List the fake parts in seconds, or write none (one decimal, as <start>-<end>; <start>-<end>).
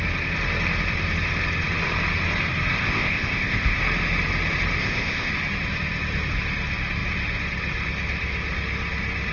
2.7-3.8; 4.8-5.3